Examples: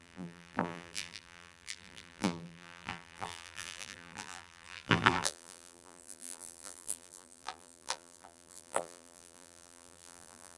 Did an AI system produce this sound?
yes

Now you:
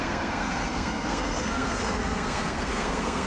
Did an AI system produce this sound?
yes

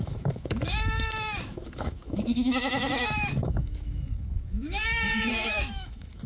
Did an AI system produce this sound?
yes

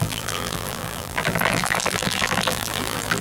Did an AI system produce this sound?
yes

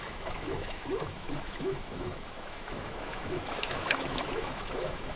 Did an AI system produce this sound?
yes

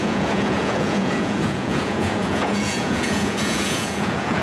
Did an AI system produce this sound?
yes